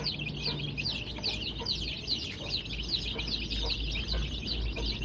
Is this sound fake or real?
real